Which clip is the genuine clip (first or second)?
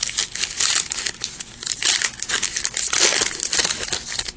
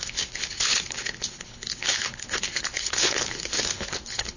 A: first